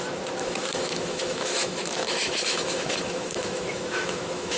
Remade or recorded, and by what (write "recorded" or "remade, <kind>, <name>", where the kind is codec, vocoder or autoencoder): remade, autoencoder, DAC-VAE